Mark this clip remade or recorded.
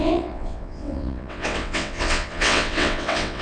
remade